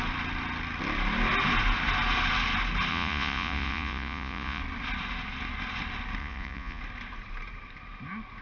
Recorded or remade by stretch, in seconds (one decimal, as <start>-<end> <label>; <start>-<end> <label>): 0.0-2.9 recorded; 2.9-4.6 remade; 4.6-6.2 recorded; 6.2-6.8 remade; 6.8-8.4 recorded